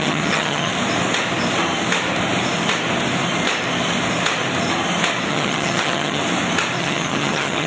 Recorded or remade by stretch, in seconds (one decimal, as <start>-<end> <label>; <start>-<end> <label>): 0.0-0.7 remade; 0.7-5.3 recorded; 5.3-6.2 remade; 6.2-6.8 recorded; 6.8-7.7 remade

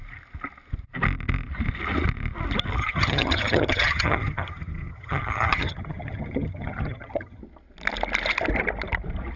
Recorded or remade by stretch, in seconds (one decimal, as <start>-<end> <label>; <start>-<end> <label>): 0.0-2.8 recorded; 2.8-7.4 remade; 7.4-9.4 recorded

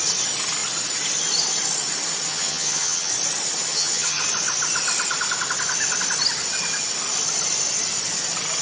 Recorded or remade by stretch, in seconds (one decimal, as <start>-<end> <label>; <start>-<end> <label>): 0.0-2.3 recorded; 2.3-3.1 remade; 3.1-3.7 recorded; 3.7-4.2 remade; 4.2-8.6 recorded

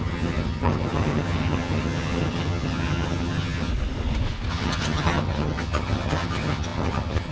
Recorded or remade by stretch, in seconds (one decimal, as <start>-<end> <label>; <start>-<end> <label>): 0.0-3.7 remade; 3.7-4.5 recorded; 4.5-7.3 remade